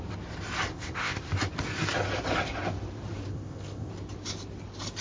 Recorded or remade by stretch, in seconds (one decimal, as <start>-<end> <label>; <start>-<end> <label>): 0.0-0.7 recorded; 0.7-1.3 remade; 1.3-3.3 recorded; 3.3-3.9 remade; 3.9-5.0 recorded